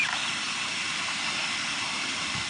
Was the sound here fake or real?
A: real